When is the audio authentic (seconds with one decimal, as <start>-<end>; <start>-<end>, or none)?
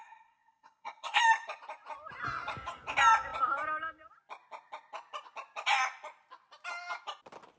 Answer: 1.2-7.6